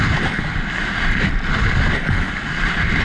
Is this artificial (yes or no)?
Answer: no